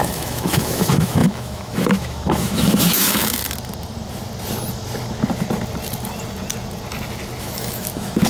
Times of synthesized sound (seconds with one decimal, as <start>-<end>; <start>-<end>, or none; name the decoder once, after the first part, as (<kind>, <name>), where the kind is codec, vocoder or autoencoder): 0.0-3.4 (autoencoder, DAC-VAE); 7.4-8.3